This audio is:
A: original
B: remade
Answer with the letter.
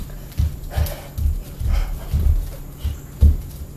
A